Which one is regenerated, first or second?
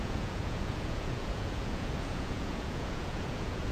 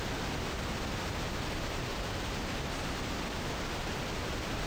first